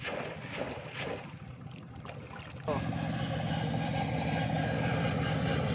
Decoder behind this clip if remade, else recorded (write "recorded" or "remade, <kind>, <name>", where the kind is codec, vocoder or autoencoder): recorded